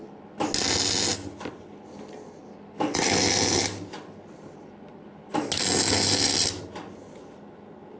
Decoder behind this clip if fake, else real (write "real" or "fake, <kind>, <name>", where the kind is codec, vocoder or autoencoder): real